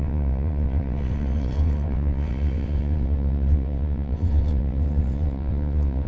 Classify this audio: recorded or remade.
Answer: remade